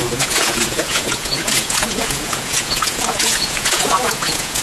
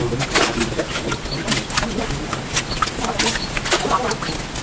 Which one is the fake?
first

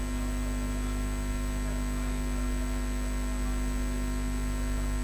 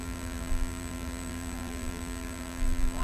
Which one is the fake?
second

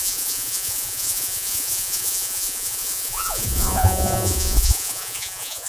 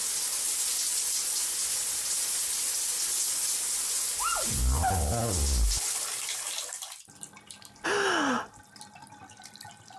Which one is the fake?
first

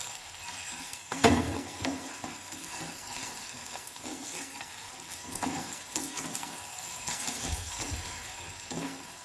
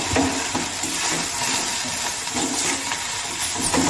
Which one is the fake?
first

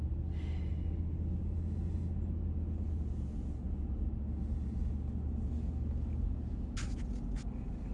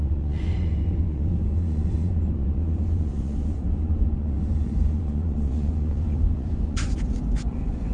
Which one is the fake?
second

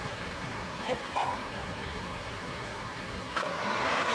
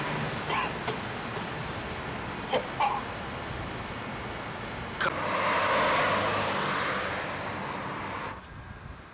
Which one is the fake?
first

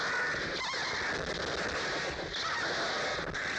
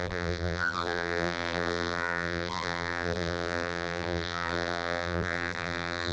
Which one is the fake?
second